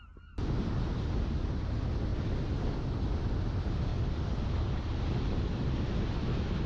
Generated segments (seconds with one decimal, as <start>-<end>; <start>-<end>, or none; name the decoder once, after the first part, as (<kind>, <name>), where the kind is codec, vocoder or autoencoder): 2.1-3.4 (vocoder, BigVGAN v2); 3.9-5.5